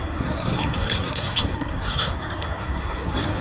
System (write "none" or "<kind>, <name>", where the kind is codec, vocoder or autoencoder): codec, SNAC